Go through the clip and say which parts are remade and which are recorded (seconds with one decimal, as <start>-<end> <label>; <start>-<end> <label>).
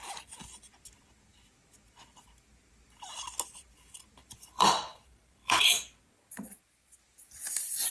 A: 0.0-4.2 recorded; 4.2-5.8 remade; 5.8-7.9 recorded